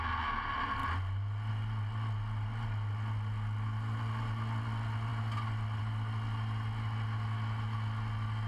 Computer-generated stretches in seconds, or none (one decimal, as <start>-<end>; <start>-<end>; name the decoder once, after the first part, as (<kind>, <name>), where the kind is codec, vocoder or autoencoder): none